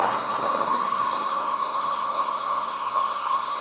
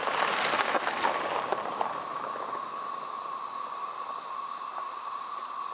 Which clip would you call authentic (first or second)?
second